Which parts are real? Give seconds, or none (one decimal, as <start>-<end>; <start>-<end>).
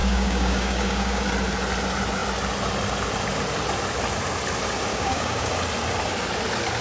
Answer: 1.2-4.9; 5.5-6.8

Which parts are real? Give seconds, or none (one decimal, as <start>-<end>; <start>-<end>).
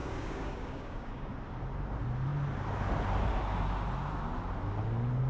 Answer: 1.3-5.3